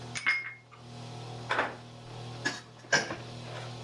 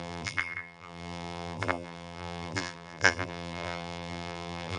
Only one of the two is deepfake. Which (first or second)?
second